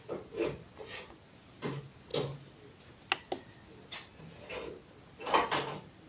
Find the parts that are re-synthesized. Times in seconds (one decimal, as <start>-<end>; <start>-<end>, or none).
none

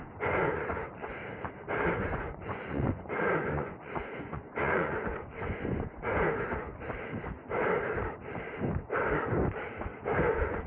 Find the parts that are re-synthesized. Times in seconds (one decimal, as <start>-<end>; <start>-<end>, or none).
0.0-1.2; 1.9-6.7; 9.9-10.7

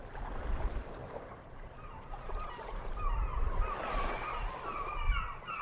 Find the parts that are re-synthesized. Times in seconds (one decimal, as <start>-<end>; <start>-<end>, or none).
1.0-4.1

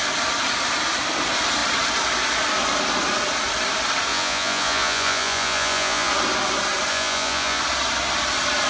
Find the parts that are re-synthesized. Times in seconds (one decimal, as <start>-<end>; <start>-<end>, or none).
4.1-6.1; 6.9-7.6

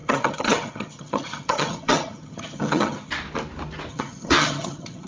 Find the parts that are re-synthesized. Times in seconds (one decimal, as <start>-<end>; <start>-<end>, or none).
0.0-3.1; 3.9-5.1